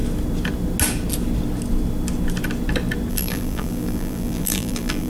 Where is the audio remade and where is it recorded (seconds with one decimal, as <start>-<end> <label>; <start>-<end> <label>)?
0.0-3.1 recorded; 3.1-5.1 remade